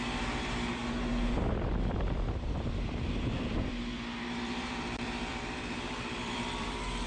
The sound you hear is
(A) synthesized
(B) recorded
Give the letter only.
A